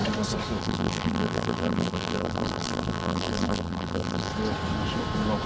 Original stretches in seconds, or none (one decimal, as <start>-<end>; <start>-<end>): 0.0-0.6; 4.3-5.5